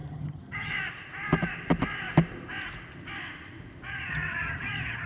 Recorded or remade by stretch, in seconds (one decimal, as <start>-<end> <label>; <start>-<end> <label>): 0.0-0.7 remade; 0.7-3.9 recorded; 3.9-5.1 remade